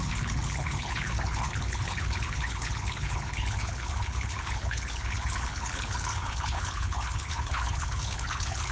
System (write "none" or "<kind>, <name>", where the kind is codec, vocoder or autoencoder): codec, HILCodec